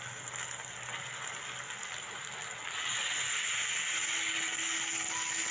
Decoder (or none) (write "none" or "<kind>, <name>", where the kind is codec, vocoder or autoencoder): none